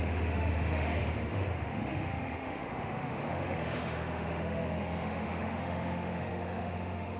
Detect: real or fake fake